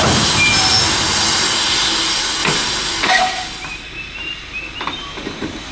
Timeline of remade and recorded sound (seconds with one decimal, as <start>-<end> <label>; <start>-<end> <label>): 0.0-5.7 recorded